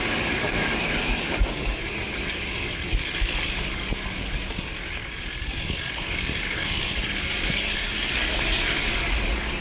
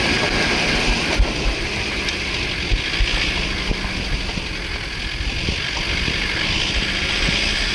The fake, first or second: first